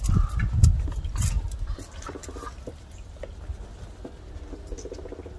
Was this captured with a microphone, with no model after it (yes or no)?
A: yes